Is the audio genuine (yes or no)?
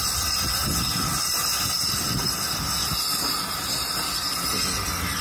yes